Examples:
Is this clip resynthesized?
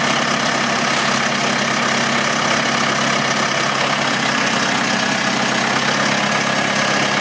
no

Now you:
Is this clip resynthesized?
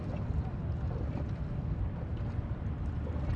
no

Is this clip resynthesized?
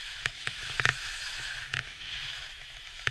yes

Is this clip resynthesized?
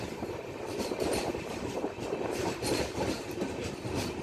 yes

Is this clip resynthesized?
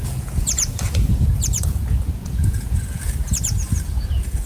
yes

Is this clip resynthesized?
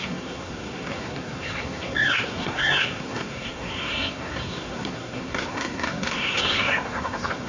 yes